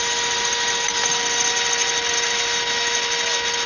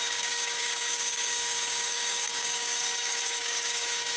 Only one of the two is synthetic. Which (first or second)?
second